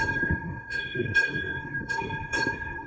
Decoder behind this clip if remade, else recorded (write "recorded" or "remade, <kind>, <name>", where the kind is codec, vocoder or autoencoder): remade, codec, SNAC